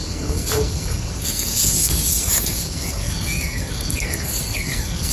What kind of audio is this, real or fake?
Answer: fake